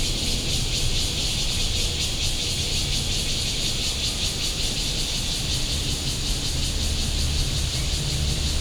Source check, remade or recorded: recorded